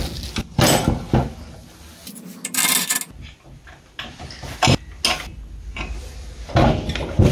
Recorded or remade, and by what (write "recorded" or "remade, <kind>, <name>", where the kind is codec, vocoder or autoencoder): recorded